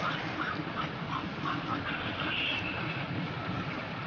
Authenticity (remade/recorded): recorded